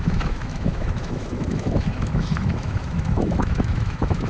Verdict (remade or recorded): remade